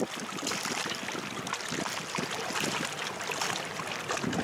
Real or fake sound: real